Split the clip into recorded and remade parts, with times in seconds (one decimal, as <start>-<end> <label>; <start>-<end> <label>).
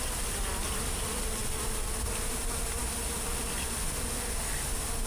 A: 0.0-5.1 recorded